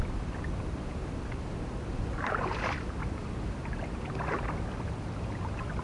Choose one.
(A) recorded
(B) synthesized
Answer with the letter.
B